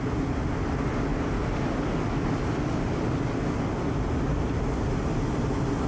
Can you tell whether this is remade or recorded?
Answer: recorded